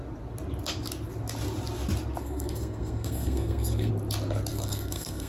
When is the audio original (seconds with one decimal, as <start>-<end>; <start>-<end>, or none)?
0.0-2.2; 3.9-4.5